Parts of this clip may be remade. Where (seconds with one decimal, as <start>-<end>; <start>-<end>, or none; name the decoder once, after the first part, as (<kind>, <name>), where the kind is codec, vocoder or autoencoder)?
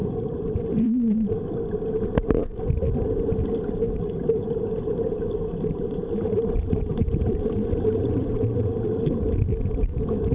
0.0-1.3 (vocoder, BigVGAN v2); 4.3-8.3